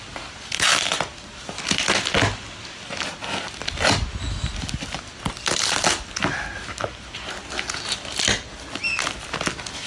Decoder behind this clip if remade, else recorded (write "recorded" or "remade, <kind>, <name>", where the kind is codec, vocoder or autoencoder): recorded